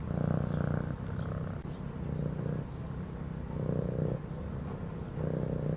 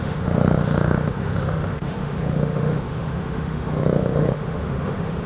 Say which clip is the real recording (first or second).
first